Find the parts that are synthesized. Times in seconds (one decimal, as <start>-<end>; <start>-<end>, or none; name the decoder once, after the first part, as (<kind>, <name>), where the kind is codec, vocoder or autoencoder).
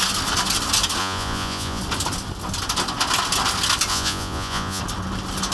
1.0-1.8 (vocoder, Vocos); 3.9-4.8